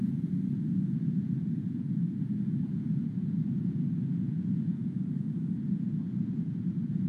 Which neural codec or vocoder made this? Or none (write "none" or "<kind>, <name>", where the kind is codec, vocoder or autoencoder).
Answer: vocoder, Vocos